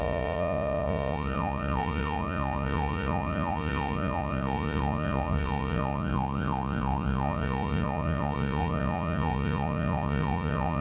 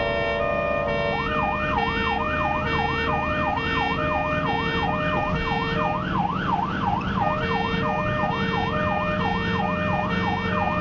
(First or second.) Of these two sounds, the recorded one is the second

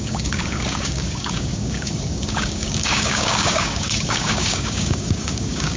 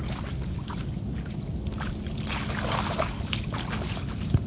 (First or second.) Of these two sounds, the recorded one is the second